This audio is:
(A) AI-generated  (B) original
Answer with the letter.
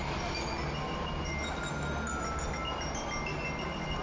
B